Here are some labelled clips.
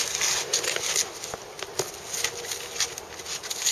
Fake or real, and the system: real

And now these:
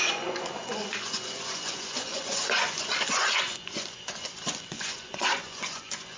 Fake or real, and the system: fake, vocoder, Vocos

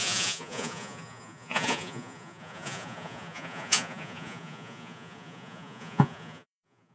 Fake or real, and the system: fake, vocoder, Vocos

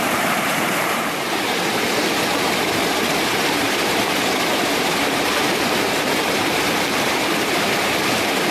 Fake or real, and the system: fake, vocoder, BigVGAN v2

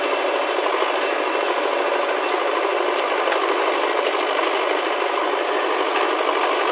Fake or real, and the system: real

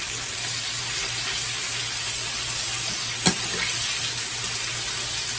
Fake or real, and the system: real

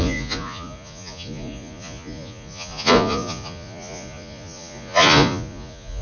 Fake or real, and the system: fake, vocoder, Vocos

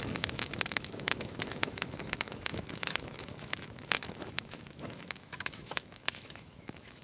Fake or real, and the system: fake, autoencoder, DAC-VAE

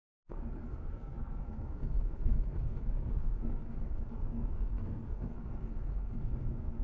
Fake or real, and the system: fake, codec, SNAC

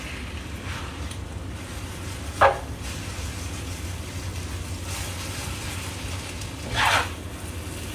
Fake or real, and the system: real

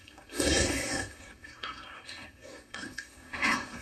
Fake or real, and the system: fake, codec, SNAC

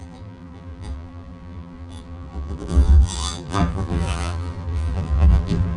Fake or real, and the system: fake, vocoder, BigVGAN v2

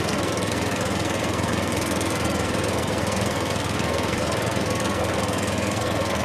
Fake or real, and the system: fake, codec, SNAC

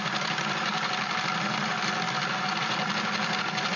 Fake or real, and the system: real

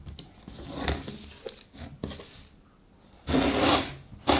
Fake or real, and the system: real